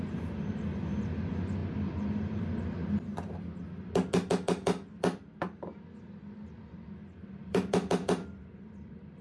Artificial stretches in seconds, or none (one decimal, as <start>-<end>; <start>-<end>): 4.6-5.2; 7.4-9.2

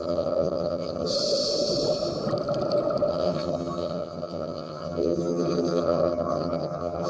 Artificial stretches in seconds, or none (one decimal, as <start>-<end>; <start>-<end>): 0.0-1.1; 3.1-7.1

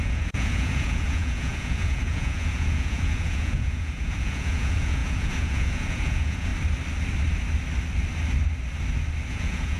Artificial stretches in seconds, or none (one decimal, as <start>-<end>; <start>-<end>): 0.0-6.5; 9.3-9.8